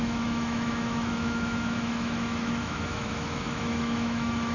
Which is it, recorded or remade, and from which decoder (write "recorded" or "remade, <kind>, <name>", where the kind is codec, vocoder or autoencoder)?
remade, autoencoder, DAC-VAE